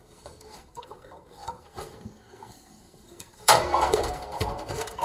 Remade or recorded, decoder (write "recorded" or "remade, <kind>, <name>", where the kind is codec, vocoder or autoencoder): remade, codec, SNAC